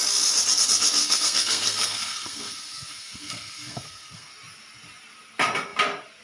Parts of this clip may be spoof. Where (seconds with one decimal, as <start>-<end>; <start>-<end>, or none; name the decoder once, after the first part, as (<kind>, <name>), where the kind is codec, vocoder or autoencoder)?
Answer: 1.0-4.3 (codec, SNAC)